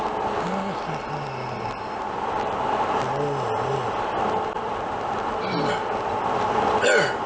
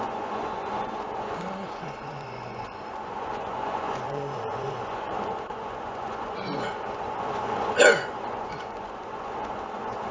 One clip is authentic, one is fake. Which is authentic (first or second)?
first